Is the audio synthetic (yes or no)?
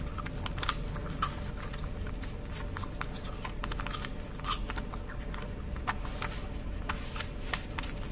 no